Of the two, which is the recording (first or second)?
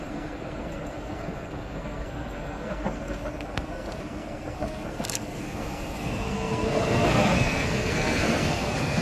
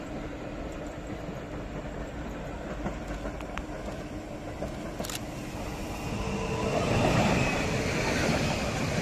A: second